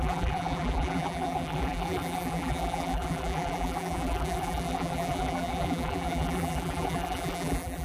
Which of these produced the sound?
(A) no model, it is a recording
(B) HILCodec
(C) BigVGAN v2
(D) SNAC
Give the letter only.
C